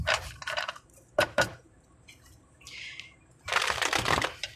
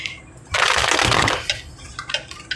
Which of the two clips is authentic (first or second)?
second